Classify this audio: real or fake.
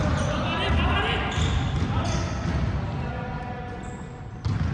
real